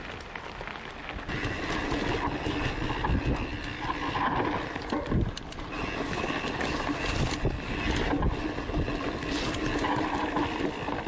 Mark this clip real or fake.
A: real